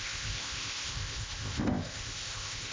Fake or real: fake